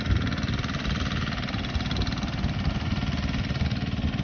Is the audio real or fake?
real